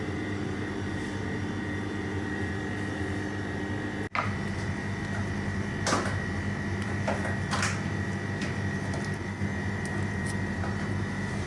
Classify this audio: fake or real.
real